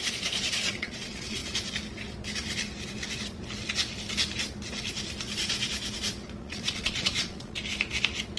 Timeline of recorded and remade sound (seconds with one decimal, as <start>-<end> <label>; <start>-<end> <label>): 0.0-1.4 remade; 1.4-6.4 recorded; 6.4-7.6 remade; 7.6-8.4 recorded